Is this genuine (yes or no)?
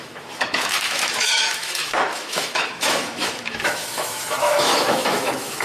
no